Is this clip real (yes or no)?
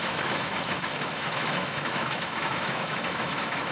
no